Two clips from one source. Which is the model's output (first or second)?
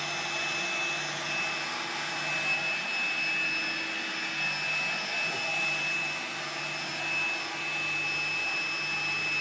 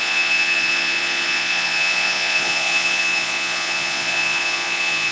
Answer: second